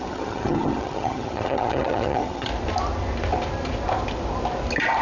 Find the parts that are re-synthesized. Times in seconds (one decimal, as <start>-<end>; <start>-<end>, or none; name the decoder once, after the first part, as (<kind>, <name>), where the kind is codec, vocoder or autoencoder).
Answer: 0.0-2.5 (vocoder, HiFi-GAN)